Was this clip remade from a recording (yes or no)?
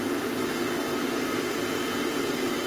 no